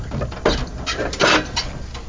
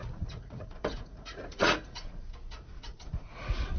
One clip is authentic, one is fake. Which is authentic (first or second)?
first